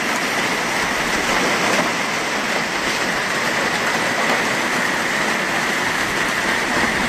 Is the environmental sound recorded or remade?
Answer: recorded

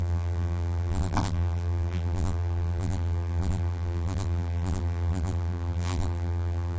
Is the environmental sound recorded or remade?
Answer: remade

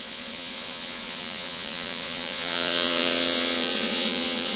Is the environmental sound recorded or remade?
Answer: remade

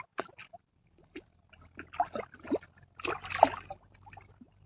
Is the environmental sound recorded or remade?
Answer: recorded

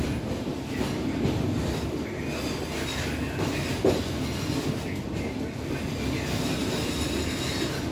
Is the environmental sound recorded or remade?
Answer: recorded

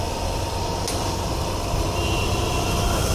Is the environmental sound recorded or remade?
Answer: recorded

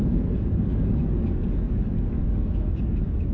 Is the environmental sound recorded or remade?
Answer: remade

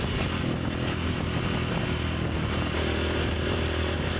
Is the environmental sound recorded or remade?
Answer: recorded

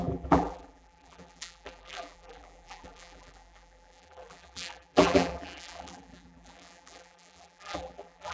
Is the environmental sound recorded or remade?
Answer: remade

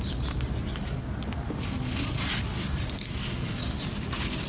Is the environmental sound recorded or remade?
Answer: recorded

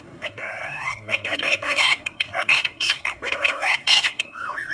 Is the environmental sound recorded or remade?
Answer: remade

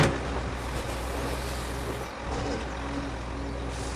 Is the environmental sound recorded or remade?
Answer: recorded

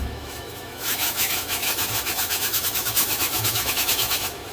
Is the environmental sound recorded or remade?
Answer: remade